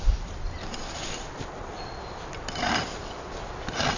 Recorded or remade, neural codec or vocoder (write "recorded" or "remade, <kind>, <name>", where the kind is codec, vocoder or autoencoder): recorded